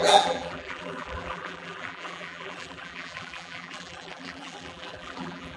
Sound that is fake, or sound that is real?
fake